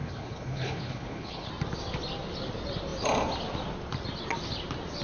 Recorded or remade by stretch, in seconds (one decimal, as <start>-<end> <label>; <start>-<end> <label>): 0.0-1.5 remade; 1.5-5.0 recorded